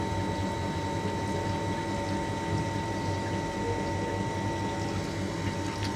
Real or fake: real